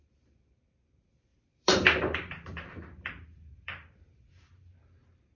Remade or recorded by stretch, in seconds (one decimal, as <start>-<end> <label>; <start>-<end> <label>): 0.0-1.3 recorded; 1.3-4.5 remade; 4.5-5.4 recorded